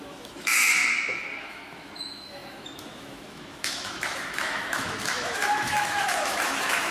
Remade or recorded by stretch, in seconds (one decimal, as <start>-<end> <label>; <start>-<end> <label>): 0.0-0.8 remade; 0.8-1.4 recorded; 1.4-6.9 remade